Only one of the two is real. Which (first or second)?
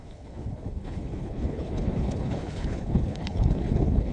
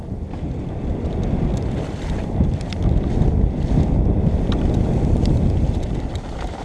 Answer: second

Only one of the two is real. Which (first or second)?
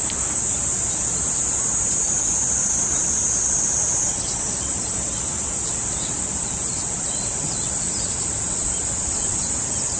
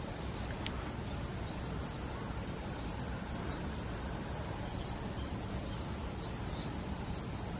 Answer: second